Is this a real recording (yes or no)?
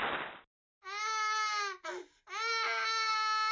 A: yes